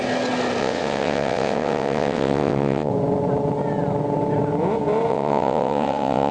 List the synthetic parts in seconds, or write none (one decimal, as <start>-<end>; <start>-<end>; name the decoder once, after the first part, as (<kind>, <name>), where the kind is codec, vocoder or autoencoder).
0.6-2.9 (vocoder, WaveNeXt); 5.1-6.3